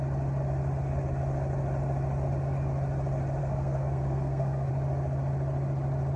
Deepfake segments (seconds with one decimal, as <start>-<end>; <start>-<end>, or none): 3.4-4.7